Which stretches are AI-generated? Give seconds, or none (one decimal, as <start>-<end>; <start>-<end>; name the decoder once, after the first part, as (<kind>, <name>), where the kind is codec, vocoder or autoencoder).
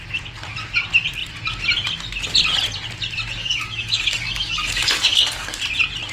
3.4-5.6 (codec, DAC)